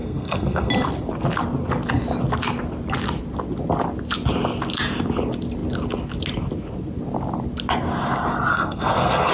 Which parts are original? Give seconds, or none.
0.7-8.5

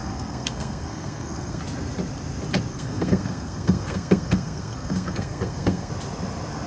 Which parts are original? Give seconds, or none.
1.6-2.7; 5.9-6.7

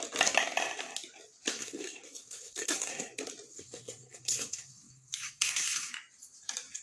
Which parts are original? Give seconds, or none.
0.0-1.5; 3.1-3.5; 5.9-6.8